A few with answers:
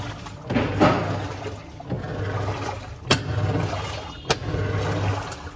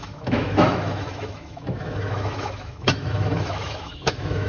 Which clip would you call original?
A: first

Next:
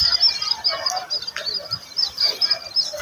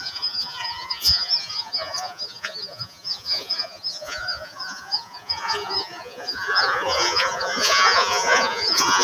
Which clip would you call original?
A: first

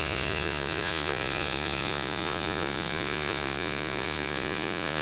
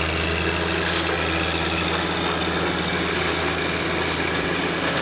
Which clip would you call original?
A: second